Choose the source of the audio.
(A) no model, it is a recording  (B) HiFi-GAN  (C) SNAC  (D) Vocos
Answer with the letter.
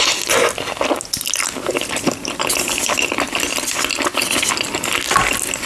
A